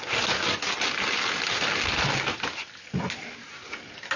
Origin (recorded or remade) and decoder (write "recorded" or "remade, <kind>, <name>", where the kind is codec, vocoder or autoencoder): recorded